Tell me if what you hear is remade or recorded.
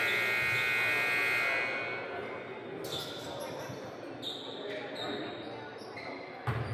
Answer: recorded